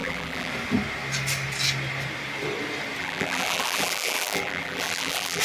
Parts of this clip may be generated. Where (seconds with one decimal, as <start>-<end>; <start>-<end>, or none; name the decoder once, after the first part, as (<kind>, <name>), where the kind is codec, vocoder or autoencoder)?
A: 0.0-0.5 (vocoder, BigVGAN v2); 3.0-5.4